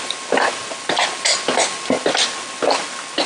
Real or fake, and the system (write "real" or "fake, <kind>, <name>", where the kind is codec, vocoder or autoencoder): real